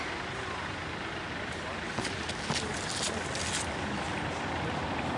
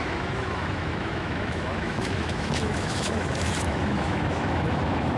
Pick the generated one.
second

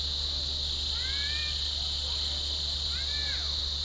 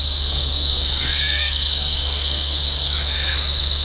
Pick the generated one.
second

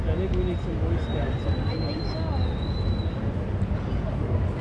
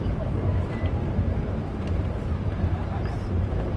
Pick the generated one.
second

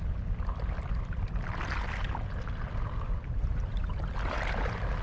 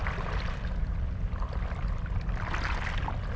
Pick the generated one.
first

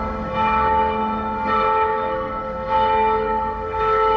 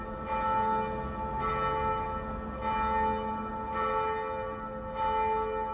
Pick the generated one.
first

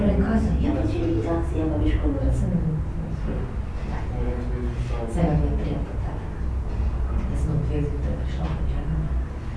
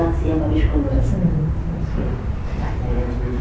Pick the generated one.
second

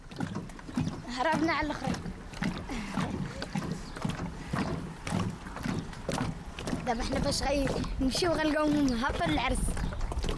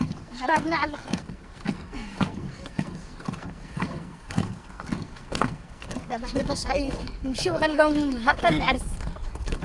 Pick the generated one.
second